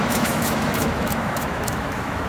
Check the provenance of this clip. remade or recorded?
remade